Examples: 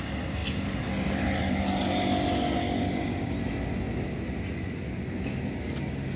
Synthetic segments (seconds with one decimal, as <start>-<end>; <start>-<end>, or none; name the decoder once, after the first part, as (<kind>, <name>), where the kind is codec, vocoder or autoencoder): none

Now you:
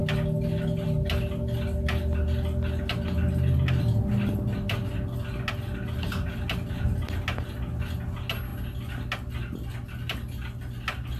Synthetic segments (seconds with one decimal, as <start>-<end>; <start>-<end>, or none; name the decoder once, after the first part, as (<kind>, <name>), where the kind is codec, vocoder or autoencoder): none

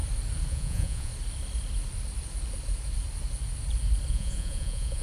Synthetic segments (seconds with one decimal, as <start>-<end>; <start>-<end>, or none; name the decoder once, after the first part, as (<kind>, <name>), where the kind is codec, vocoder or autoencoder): 0.5-1.1 (vocoder, Vocos); 4.1-5.0

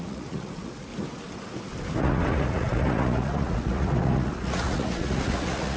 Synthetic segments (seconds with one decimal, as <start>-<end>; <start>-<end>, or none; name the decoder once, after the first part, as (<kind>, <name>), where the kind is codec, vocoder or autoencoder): 0.0-0.9 (vocoder, Vocos); 2.0-5.8

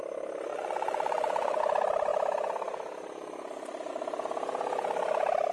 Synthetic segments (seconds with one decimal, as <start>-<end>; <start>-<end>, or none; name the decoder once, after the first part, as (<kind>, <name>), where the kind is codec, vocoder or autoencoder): 0.5-1.6 (vocoder, Vocos)

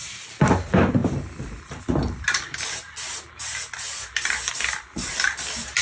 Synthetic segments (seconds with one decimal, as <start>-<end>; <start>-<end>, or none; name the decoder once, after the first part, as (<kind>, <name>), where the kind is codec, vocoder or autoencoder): none